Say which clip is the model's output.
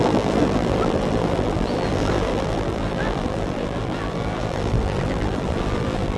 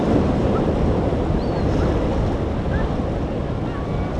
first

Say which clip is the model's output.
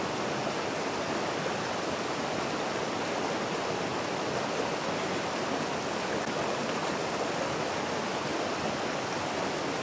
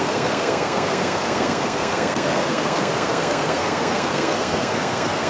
second